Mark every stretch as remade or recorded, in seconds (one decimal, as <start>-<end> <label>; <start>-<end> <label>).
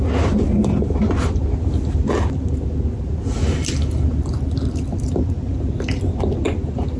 0.0-7.0 recorded